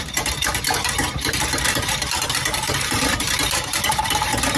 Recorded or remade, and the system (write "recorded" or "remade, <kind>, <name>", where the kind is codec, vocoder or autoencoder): remade, vocoder, BigVGAN v2